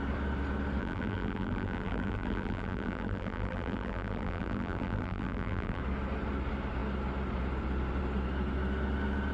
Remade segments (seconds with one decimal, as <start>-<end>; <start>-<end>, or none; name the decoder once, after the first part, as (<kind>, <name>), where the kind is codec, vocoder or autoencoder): 0.8-5.8 (vocoder, BigVGAN v2)